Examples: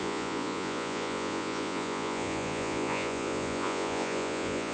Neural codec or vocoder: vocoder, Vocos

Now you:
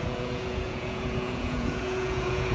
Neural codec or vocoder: vocoder, Vocos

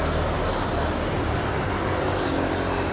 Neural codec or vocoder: none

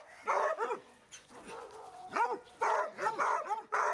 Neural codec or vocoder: vocoder, Vocos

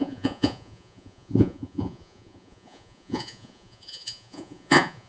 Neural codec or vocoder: vocoder, Vocos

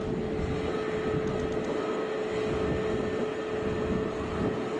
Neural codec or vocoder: none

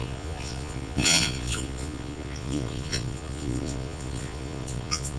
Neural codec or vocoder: vocoder, Vocos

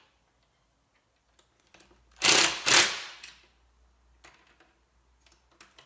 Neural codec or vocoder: none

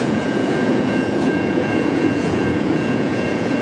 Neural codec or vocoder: vocoder, Vocos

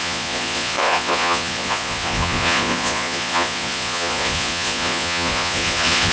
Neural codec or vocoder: vocoder, Vocos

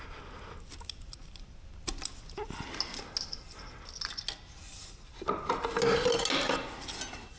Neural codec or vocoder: none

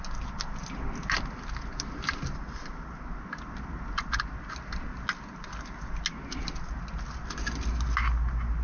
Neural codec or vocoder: none